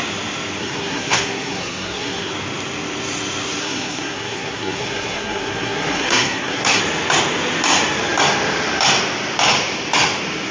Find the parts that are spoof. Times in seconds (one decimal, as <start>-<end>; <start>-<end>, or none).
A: 0.6-2.3; 3.6-6.8